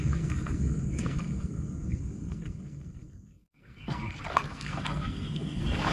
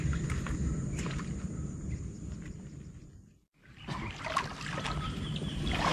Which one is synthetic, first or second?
first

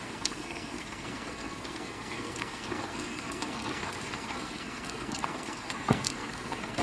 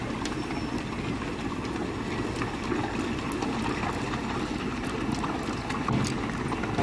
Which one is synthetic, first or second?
first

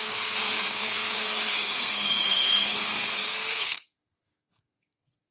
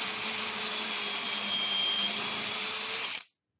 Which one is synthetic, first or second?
first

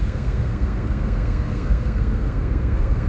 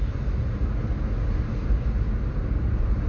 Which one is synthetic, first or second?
first